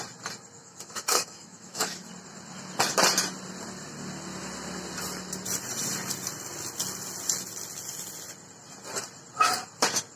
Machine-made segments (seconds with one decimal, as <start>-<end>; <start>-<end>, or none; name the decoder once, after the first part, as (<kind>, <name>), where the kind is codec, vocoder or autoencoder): 0.6-2.1 (autoencoder, DAC-VAE)